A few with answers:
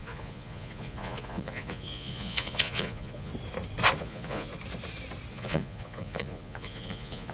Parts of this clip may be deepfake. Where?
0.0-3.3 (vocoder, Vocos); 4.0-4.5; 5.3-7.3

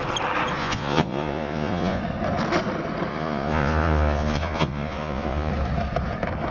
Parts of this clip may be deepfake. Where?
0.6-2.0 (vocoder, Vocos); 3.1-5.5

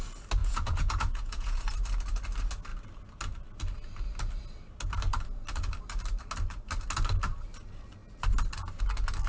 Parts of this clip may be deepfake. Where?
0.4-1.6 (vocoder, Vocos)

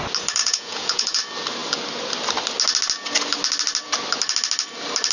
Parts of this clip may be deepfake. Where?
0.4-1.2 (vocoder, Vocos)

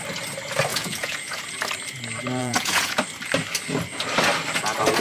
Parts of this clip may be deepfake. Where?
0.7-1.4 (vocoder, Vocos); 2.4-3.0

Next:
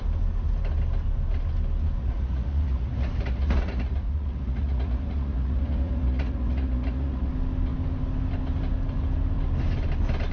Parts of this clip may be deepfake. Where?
2.0-7.3 (vocoder, Vocos)

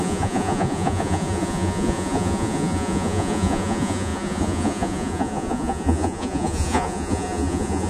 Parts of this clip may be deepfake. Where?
0.0-7.9 (vocoder, Vocos)

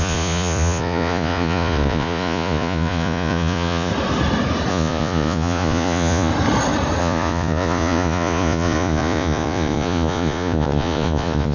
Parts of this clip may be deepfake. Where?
0.0-3.9 (vocoder, Vocos); 4.7-6.3; 7.0-11.5